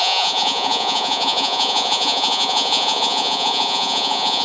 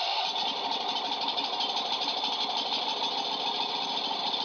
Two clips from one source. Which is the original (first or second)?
second